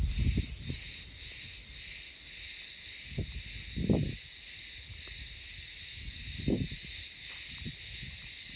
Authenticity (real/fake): real